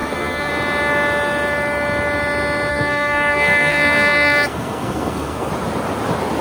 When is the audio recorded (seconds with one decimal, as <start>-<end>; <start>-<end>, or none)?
0.5-2.7; 5.5-6.4